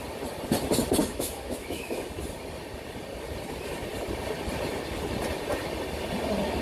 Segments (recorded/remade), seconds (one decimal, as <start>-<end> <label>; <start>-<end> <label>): 0.0-1.0 recorded; 1.0-2.0 remade; 2.0-6.6 recorded